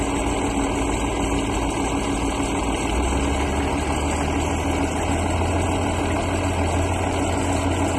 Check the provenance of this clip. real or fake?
real